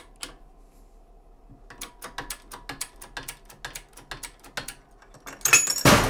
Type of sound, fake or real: real